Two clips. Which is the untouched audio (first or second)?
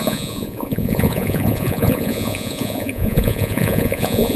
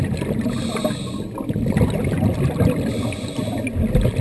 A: second